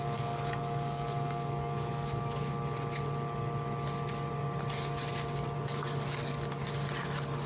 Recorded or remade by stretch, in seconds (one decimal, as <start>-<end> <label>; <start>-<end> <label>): 0.0-2.5 remade; 2.5-5.6 recorded; 5.6-6.6 remade; 6.6-7.5 recorded